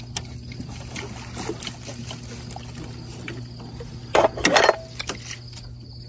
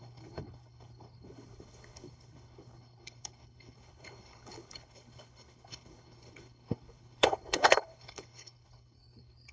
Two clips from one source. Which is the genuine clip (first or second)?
first